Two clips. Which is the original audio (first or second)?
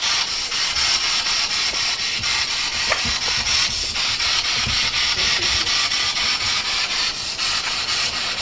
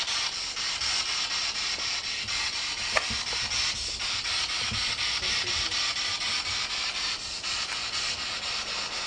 second